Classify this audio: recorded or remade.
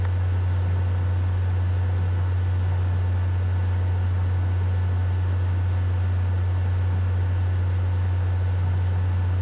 recorded